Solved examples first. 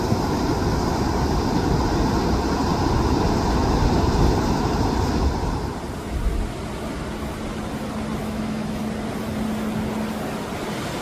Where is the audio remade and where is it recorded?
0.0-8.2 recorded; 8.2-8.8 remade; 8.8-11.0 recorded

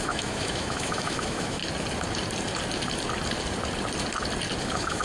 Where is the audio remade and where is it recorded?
0.0-1.6 remade; 1.6-4.6 recorded; 4.6-5.0 remade

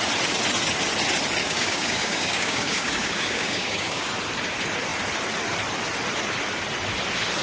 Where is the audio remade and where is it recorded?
0.0-1.4 recorded; 1.4-4.1 remade; 4.1-7.4 recorded

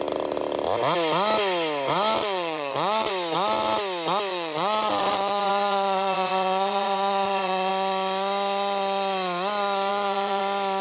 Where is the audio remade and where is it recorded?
0.0-2.2 recorded; 2.2-3.1 remade; 3.1-4.3 recorded; 4.3-7.7 remade; 7.7-9.9 recorded; 9.9-10.4 remade; 10.4-10.8 recorded

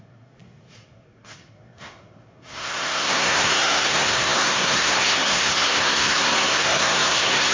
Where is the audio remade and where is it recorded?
0.0-7.5 remade